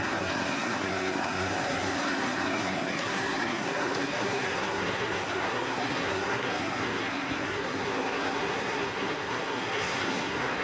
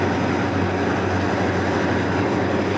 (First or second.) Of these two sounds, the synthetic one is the first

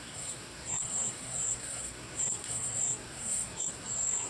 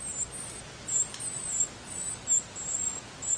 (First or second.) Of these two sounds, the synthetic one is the first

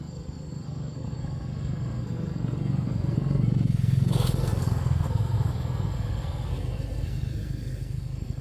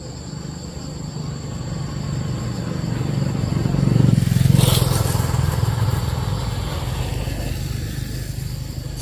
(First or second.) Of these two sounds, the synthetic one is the first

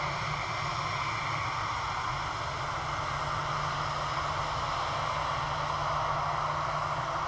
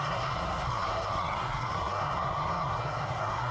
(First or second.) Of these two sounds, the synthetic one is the second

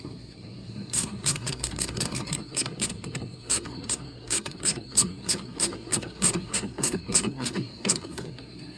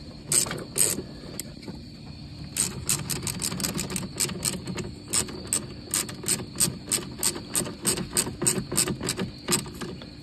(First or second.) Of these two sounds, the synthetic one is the first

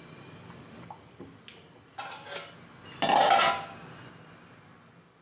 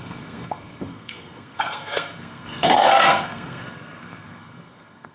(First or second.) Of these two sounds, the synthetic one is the second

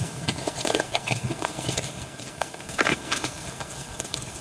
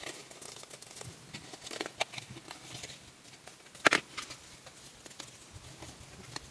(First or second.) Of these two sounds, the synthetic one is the first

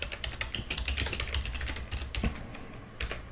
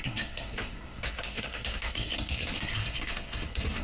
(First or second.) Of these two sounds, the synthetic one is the second